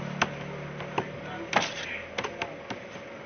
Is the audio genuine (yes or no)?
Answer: yes